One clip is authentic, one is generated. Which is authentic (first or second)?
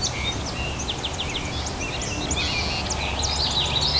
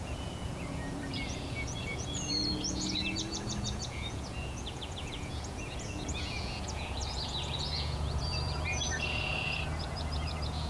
first